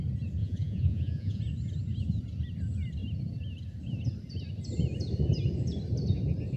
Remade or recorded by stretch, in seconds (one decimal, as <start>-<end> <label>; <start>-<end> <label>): 0.0-0.4 recorded; 0.4-1.4 remade; 1.4-6.6 recorded